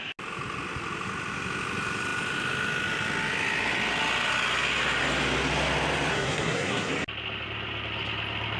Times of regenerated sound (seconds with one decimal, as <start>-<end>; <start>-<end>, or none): 6.1-6.9